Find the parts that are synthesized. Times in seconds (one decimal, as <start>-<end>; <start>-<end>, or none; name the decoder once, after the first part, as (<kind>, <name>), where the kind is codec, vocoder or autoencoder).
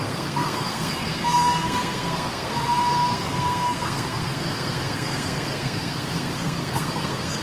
0.0-7.4 (codec, SNAC)